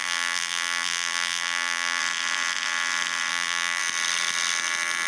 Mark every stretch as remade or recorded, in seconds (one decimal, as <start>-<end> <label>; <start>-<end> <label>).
0.0-2.0 remade; 2.0-3.3 recorded; 3.3-3.8 remade; 3.8-5.1 recorded